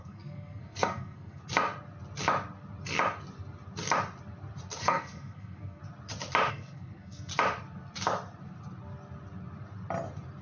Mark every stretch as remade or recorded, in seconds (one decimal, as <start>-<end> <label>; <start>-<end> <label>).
0.0-1.4 remade; 1.4-4.8 recorded; 4.8-5.8 remade; 5.8-6.5 recorded; 6.5-7.3 remade; 7.3-10.4 recorded